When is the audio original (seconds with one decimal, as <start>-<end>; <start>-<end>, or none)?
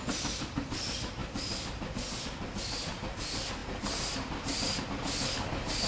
0.0-5.9